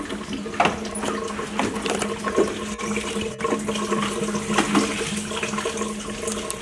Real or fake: real